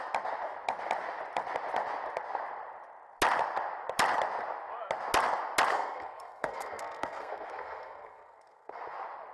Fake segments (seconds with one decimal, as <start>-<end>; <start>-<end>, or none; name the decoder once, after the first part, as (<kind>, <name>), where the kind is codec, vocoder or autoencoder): 5.7-8.8 (codec, SNAC)